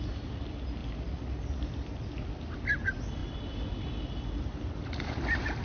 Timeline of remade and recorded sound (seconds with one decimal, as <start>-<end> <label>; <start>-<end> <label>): 0.0-5.6 recorded